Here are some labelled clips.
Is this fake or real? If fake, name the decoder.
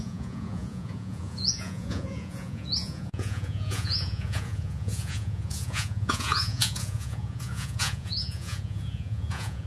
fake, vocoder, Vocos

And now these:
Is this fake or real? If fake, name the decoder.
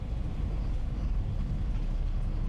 real